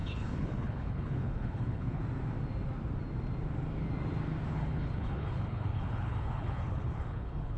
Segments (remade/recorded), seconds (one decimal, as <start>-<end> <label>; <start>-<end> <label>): 0.0-2.0 remade; 2.0-4.5 recorded; 4.5-7.6 remade